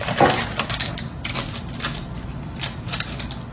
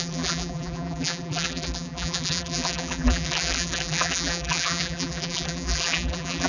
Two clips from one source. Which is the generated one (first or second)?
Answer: second